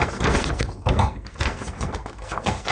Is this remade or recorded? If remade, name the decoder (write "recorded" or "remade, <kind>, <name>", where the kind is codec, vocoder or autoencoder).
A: remade, codec, SNAC